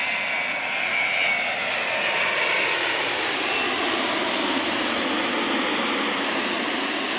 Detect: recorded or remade recorded